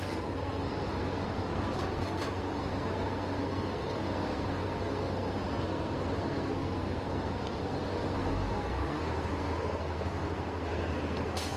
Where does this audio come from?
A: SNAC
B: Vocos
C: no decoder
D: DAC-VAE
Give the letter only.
A